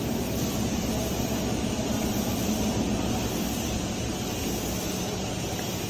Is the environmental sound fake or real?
real